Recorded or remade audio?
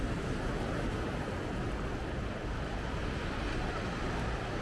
recorded